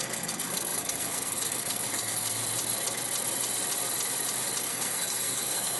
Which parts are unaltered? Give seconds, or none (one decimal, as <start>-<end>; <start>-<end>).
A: 2.4-4.6